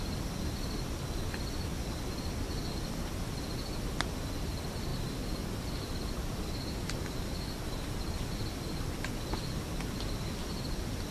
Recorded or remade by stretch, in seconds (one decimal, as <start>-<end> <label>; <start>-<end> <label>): 0.0-11.1 recorded